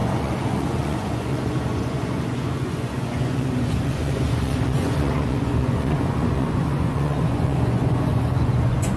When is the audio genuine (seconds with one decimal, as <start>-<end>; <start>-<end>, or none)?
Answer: none